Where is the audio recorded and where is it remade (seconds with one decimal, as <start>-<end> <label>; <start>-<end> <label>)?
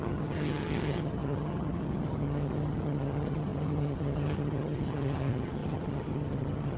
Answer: 0.0-6.8 remade